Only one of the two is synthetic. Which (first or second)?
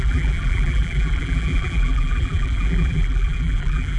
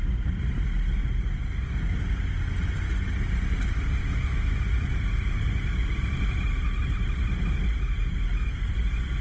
first